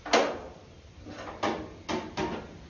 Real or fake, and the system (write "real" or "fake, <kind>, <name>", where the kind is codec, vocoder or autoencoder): real